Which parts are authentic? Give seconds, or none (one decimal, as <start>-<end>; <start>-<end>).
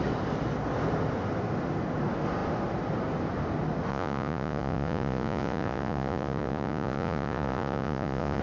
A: 0.0-3.9